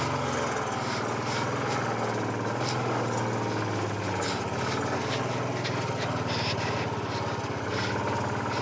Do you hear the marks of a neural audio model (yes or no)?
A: no